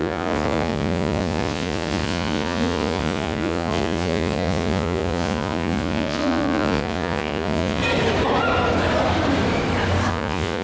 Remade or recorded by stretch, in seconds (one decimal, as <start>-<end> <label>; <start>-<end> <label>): 0.0-7.8 remade; 7.8-10.1 recorded; 10.1-10.6 remade